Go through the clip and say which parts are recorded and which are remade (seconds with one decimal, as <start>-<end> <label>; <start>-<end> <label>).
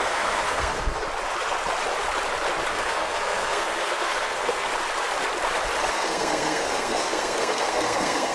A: 0.0-1.0 remade; 1.0-2.7 recorded; 2.7-4.7 remade; 4.7-5.9 recorded; 5.9-8.3 remade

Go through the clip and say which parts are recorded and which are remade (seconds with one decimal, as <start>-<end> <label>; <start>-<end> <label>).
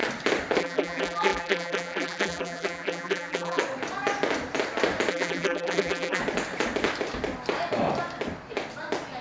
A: 0.0-0.6 recorded; 0.6-3.6 remade; 3.6-5.1 recorded; 5.1-6.2 remade; 6.2-9.2 recorded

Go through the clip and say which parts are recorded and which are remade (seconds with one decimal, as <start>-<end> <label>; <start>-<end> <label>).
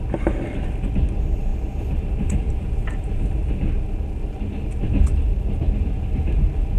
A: 0.0-1.5 recorded; 1.5-3.1 remade; 3.1-6.8 recorded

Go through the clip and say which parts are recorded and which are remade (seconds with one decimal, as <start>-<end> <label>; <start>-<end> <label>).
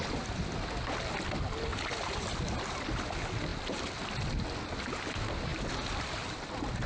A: 0.0-6.9 recorded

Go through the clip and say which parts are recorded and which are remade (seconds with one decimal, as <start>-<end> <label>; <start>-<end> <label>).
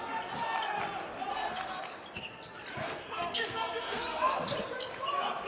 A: 0.0-1.3 recorded; 1.3-1.8 remade; 1.8-2.8 recorded; 2.8-4.2 remade; 4.2-5.5 recorded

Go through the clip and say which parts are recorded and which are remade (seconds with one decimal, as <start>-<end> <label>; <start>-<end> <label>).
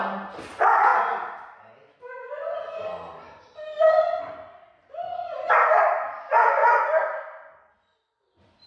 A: 0.0-8.7 recorded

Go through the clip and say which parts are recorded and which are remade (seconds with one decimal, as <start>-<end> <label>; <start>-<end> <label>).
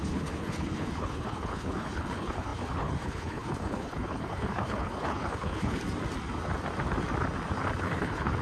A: 0.0-5.8 remade; 5.8-7.8 recorded; 7.8-8.4 remade